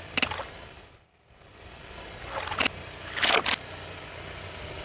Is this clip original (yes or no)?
yes